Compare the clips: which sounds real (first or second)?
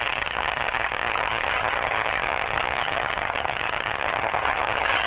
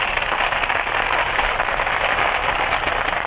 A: second